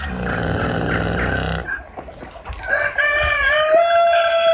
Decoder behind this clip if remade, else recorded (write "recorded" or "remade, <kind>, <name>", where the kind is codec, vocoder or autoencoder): recorded